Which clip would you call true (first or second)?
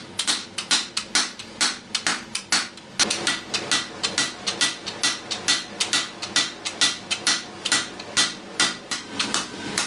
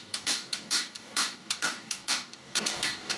first